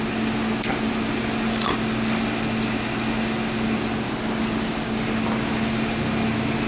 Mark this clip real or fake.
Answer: real